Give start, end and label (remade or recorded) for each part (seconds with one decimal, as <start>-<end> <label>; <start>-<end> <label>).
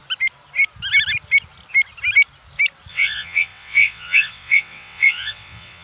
0.0-2.9 recorded; 2.9-5.8 remade